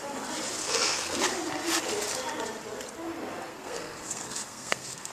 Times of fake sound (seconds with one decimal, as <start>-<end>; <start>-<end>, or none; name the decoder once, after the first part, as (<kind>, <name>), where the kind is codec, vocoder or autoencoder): 0.6-1.2 (codec, SNAC); 3.5-5.1